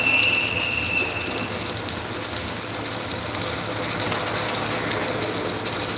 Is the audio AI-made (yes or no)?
no